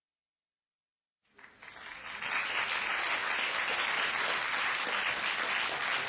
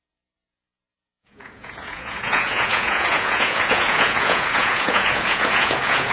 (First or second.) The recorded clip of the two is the first